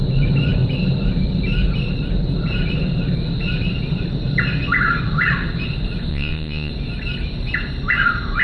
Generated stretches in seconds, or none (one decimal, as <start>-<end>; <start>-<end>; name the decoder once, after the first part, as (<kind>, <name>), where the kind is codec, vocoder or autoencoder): 6.1-6.7 (vocoder, Vocos)